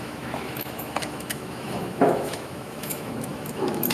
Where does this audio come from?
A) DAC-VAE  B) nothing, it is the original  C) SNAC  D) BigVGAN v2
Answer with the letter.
A